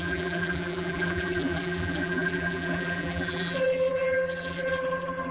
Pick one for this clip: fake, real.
fake